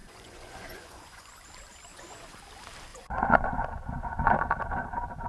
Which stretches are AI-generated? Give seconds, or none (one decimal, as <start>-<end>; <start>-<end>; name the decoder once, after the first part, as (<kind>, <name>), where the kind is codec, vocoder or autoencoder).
0.0-1.3 (vocoder, Vocos); 1.9-2.4; 2.9-4.3